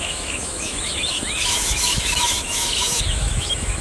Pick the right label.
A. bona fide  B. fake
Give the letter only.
B